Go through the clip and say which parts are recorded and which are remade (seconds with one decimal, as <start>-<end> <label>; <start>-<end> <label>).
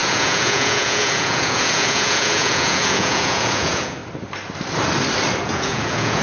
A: 0.0-4.0 remade; 4.0-5.4 recorded; 5.4-6.2 remade